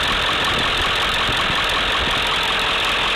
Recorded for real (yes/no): yes